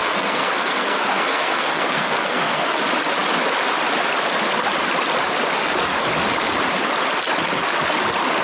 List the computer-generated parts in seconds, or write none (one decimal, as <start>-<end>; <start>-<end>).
0.0-2.8